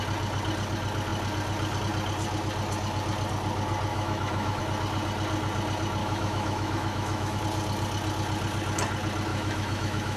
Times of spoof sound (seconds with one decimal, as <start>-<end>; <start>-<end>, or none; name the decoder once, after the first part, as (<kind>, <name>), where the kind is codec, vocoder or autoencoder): 3.9-4.6 (autoencoder, DAC-VAE); 6.0-7.4; 9.3-10.2